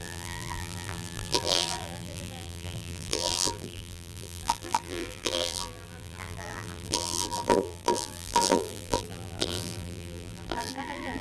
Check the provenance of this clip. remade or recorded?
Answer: remade